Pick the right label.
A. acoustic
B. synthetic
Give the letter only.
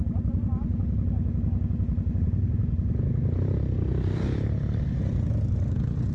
A